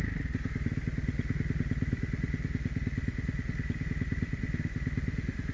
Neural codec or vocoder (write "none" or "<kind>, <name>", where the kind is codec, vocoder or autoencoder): none